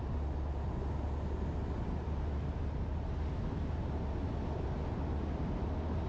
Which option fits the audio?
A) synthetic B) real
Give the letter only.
B